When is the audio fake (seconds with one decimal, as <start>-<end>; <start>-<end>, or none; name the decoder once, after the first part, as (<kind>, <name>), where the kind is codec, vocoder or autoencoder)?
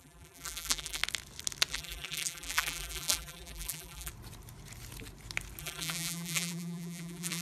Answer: 0.0-1.0 (vocoder, BigVGAN v2); 1.7-4.1; 5.6-7.4